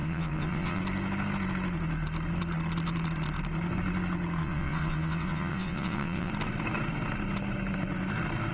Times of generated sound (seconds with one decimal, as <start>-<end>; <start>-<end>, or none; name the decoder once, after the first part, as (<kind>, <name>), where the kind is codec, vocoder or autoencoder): 0.0-0.8 (vocoder, WaveNeXt); 4.4-6.3